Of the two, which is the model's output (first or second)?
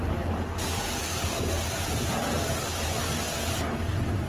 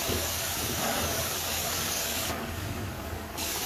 second